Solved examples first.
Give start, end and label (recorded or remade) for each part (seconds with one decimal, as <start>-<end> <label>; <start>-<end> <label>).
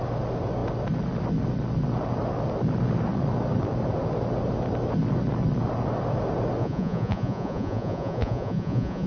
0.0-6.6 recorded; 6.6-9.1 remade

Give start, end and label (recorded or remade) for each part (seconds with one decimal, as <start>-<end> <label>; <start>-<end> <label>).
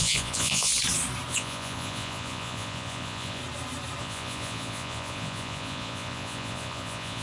0.0-0.7 remade; 0.7-1.3 recorded; 1.3-3.4 remade; 3.4-4.0 recorded; 4.0-7.2 remade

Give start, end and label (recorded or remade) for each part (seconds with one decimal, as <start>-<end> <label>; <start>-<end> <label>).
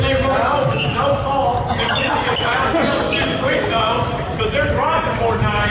0.0-0.4 recorded; 0.4-1.0 remade; 1.0-3.3 recorded; 3.3-4.1 remade; 4.1-5.7 recorded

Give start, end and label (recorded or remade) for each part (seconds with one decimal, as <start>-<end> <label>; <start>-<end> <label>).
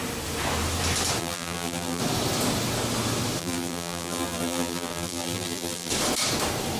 0.0-1.2 recorded; 1.2-2.0 remade; 2.0-3.4 recorded; 3.4-5.9 remade; 5.9-6.8 recorded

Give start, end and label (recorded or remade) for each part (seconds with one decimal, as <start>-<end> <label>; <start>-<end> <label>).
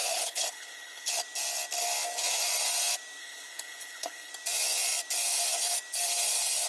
0.0-1.1 remade; 1.1-3.2 recorded; 3.2-4.3 remade; 4.3-6.7 recorded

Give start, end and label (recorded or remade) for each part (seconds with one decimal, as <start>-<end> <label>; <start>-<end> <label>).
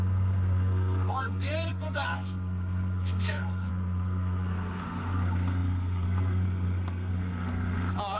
0.0-8.2 remade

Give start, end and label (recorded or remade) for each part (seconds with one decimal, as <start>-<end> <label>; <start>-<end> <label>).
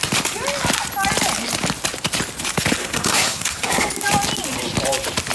0.0-2.8 recorded; 2.8-3.9 remade; 3.9-5.3 recorded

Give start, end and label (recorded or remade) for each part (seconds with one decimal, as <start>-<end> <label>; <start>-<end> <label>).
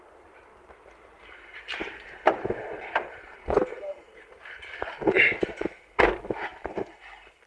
0.0-7.5 recorded